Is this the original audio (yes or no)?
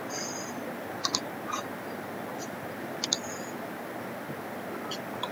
yes